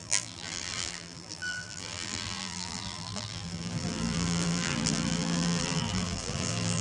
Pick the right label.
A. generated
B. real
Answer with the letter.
A